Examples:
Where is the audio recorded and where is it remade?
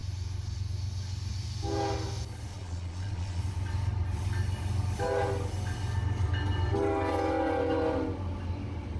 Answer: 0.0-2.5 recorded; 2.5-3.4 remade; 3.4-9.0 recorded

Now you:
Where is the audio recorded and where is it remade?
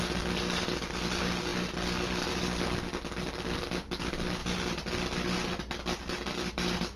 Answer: 0.0-7.0 recorded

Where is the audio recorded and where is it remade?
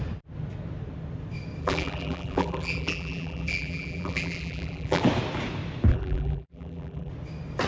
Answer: 0.0-1.6 recorded; 1.6-5.0 remade; 5.0-5.9 recorded; 5.9-7.1 remade; 7.1-7.7 recorded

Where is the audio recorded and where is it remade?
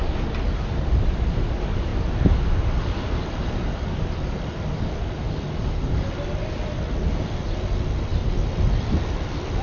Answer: 0.0-9.6 recorded